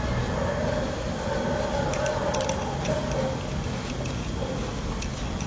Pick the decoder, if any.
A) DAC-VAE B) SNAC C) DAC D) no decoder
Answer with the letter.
D